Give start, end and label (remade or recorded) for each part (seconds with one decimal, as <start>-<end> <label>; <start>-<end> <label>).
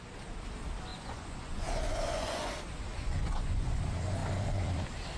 0.0-0.9 recorded; 0.9-2.5 remade; 2.5-2.9 recorded; 2.9-3.8 remade; 3.8-5.2 recorded